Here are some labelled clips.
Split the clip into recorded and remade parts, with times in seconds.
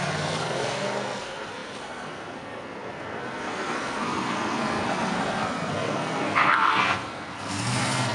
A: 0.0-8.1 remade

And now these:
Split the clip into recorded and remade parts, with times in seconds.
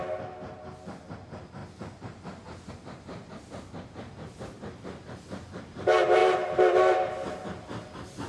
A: 0.0-8.3 recorded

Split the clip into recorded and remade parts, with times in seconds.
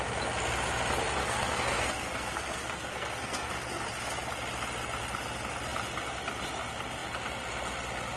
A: 0.0-1.2 recorded; 1.2-3.5 remade; 3.5-8.2 recorded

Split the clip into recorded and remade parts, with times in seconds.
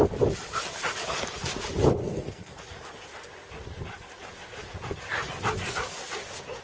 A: 0.0-2.0 recorded; 2.0-2.6 remade; 2.6-6.6 recorded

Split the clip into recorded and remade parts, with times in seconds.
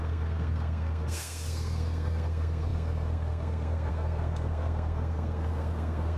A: 0.0-6.2 remade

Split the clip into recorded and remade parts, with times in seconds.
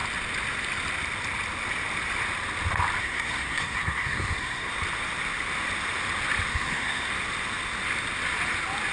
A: 0.0-3.0 recorded; 3.0-4.7 remade; 4.7-6.5 recorded; 6.5-7.1 remade; 7.1-8.9 recorded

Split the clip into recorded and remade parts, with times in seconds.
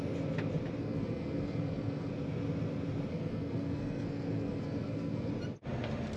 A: 0.0-0.8 recorded; 0.8-2.1 remade; 2.1-3.1 recorded; 3.1-5.3 remade; 5.3-6.2 recorded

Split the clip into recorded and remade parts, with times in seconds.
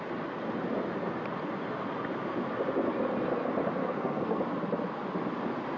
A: 0.0-3.8 recorded; 3.8-4.4 remade; 4.4-5.8 recorded